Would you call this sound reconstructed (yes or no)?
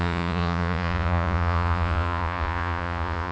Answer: yes